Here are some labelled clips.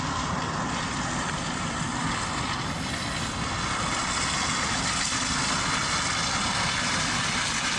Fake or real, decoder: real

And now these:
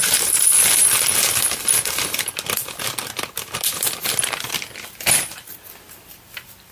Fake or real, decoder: real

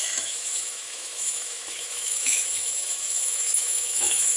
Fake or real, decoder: fake, autoencoder, DAC-VAE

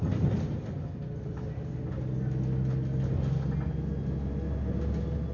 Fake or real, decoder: real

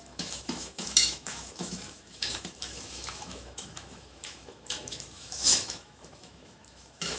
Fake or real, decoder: fake, autoencoder, DAC-VAE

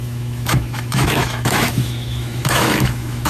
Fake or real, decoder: fake, autoencoder, DAC-VAE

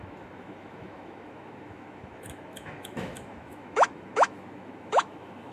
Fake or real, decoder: fake, autoencoder, DAC-VAE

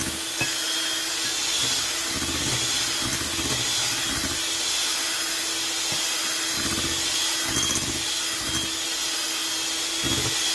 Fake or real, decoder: real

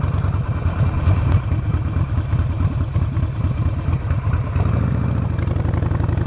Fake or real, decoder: real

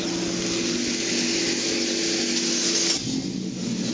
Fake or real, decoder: real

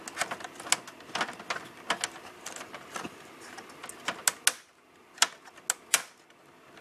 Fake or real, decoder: real